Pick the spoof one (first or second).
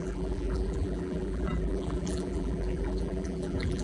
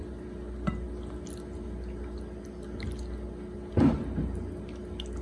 first